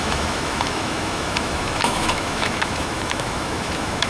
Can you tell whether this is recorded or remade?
remade